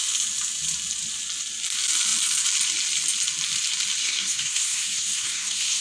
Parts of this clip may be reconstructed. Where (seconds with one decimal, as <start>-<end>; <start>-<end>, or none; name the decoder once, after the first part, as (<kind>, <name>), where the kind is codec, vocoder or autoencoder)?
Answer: 4.0-5.8 (codec, SNAC)